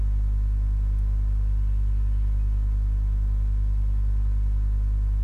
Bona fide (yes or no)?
yes